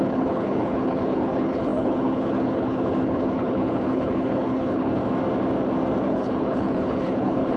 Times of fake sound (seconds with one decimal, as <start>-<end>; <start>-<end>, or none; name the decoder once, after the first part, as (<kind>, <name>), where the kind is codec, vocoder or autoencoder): 0.0-5.0 (codec, HILCodec); 6.1-7.6